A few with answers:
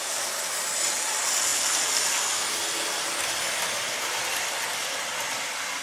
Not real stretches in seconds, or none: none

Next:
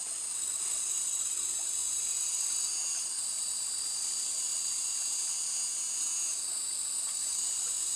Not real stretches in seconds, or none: none

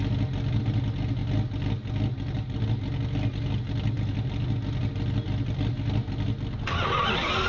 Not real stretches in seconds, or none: none